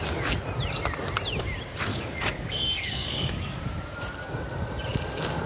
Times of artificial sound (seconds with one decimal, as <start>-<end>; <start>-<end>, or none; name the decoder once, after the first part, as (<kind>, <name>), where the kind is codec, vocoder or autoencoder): 1.9-3.6 (codec, DAC)